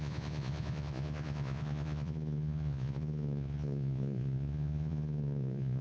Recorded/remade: remade